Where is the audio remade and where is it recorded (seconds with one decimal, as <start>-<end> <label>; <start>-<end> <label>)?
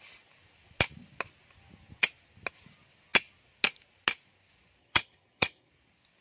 0.0-4.8 recorded; 4.8-5.7 remade; 5.7-6.2 recorded